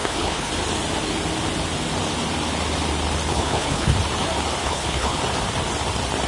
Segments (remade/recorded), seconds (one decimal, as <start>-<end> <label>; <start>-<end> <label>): 0.0-0.5 remade; 0.5-3.3 recorded; 3.3-3.9 remade; 3.9-4.6 recorded; 4.6-5.2 remade; 5.2-6.3 recorded